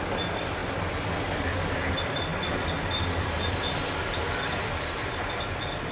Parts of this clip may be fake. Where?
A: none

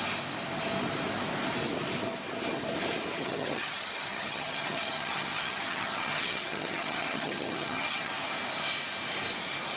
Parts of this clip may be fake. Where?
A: 3.2-8.1 (vocoder, HiFi-GAN)

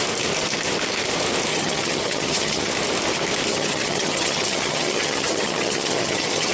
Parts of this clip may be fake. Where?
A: 1.5-2.7 (vocoder, HiFi-GAN); 3.5-6.5

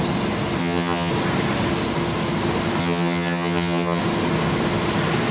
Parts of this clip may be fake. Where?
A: 0.6-1.1 (vocoder, HiFi-GAN); 2.8-4.0

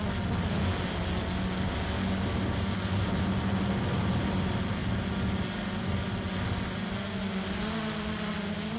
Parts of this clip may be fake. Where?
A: none

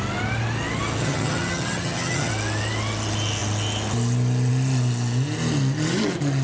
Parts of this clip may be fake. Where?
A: 1.0-2.3 (vocoder, HiFi-GAN)